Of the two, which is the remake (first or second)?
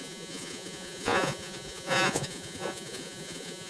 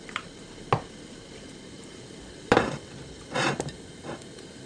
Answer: first